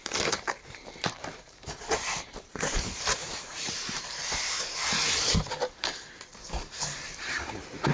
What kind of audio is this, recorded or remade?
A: remade